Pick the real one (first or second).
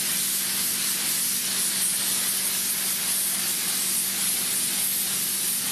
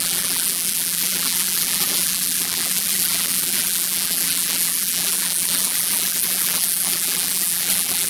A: first